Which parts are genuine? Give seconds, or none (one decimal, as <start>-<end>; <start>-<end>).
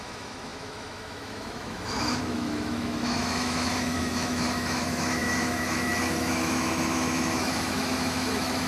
none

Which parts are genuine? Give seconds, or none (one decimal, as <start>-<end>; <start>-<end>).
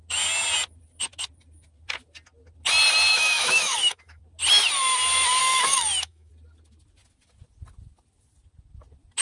0.0-3.1; 4.2-5.4; 6.3-9.2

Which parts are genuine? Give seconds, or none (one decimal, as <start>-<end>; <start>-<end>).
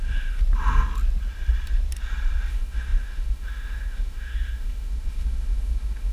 0.4-2.5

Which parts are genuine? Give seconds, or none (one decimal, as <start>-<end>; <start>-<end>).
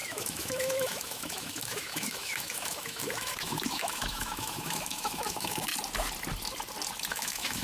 5.7-7.1